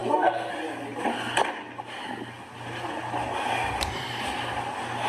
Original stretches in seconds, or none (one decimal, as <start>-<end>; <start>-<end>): 0.5-5.1